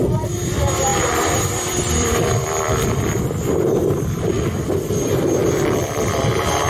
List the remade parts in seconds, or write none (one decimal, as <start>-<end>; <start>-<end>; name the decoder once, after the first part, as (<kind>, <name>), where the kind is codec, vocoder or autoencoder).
0.9-4.9 (vocoder, BigVGAN v2); 5.4-6.2